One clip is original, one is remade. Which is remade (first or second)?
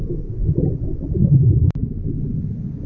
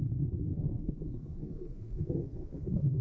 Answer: second